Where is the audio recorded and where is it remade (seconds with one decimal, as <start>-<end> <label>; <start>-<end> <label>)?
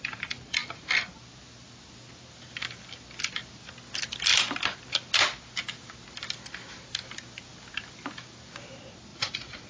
0.0-9.7 recorded